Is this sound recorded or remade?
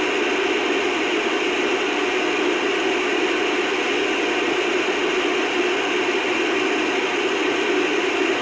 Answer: recorded